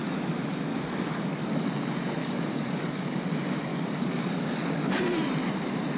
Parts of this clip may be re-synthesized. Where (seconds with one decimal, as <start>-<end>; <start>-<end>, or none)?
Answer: 0.7-1.4; 2.2-3.2; 3.7-5.0